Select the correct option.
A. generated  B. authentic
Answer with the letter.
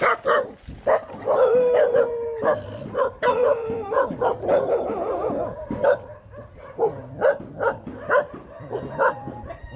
A